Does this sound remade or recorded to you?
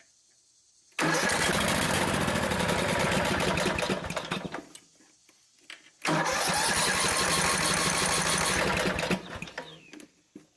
recorded